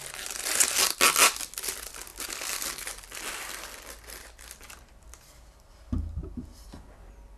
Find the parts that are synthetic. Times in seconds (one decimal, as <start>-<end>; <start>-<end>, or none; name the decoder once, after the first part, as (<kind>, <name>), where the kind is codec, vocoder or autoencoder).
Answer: none